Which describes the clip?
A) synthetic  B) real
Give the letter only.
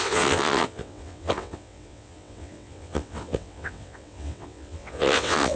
A